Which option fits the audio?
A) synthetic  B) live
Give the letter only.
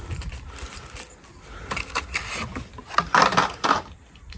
B